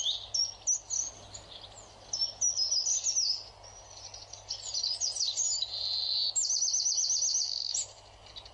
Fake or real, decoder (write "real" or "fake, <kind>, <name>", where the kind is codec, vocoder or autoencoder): real